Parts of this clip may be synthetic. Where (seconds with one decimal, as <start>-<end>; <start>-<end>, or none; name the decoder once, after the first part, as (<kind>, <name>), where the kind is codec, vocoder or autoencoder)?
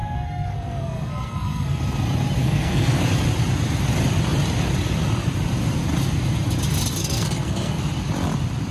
0.0-1.8 (codec, SNAC); 2.4-3.0; 7.0-7.8